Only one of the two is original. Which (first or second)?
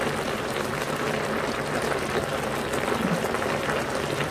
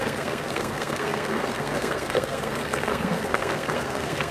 first